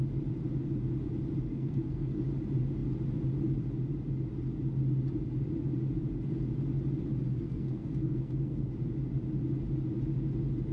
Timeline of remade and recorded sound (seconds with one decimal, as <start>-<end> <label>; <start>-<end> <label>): 0.0-1.5 recorded; 1.5-2.2 remade; 2.2-7.3 recorded; 7.3-8.7 remade; 8.7-10.7 recorded